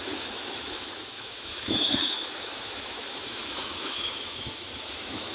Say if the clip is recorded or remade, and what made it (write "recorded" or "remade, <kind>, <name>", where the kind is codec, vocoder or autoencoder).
remade, autoencoder, DAC-VAE